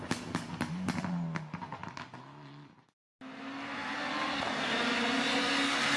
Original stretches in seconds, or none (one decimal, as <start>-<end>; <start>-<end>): 0.0-6.0